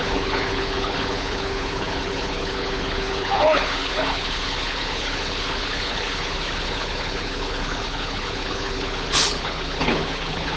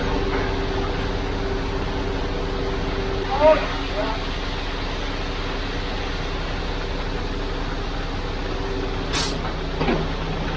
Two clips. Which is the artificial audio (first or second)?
first